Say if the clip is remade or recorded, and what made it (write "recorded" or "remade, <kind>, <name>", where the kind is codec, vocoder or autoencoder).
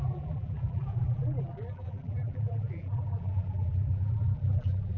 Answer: remade, vocoder, BigVGAN v2